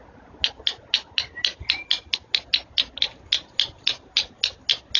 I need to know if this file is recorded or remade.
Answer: recorded